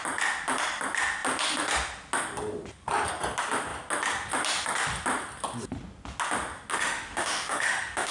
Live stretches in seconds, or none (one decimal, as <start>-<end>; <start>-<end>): 0.0-6.7

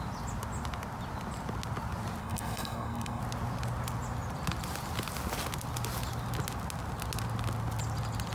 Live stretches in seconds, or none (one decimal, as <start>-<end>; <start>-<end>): 0.0-2.2; 3.2-8.3

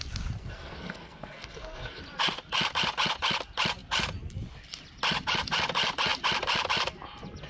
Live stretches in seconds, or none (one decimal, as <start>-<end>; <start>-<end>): 0.0-0.4; 2.0-7.5

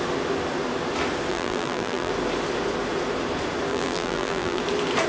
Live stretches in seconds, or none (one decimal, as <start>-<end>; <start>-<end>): 0.0-1.3; 2.1-3.7; 4.6-5.1

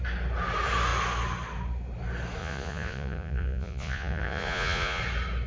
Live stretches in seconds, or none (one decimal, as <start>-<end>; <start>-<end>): 0.0-2.4; 5.0-5.5

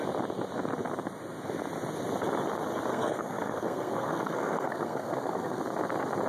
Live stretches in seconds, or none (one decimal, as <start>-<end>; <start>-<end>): 0.0-2.9; 5.6-6.3

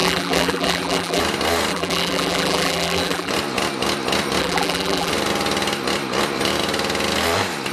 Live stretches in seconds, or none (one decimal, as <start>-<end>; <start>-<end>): 1.2-1.7; 3.3-4.4; 5.1-7.7

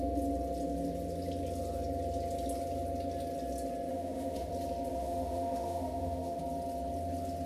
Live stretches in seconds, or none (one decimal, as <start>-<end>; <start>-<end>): 0.0-3.9; 4.5-4.9; 6.4-7.5